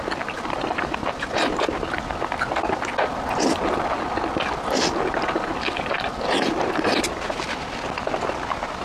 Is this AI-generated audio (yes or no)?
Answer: no